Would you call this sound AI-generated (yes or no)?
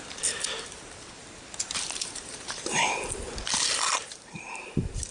yes